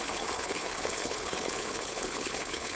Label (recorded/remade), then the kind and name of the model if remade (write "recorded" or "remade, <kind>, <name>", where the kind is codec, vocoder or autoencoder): remade, codec, HILCodec